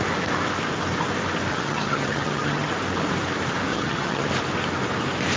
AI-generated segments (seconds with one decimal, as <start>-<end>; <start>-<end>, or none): 1.5-2.7; 3.7-4.3